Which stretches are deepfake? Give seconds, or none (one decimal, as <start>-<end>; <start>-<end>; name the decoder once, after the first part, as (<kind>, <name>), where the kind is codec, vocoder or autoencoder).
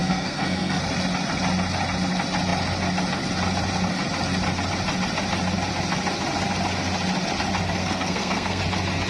0.0-0.8 (codec, SNAC); 7.8-8.6